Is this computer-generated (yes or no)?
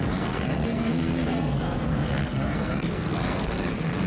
yes